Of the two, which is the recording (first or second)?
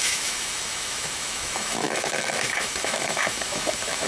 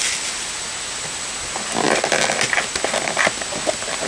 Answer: second